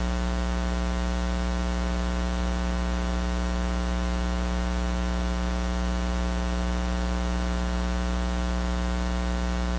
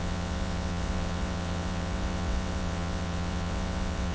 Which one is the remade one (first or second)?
second